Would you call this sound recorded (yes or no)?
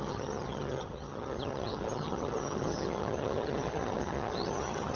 no